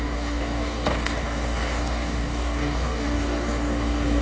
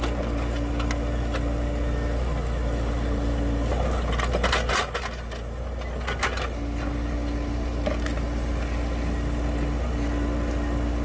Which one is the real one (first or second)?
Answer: second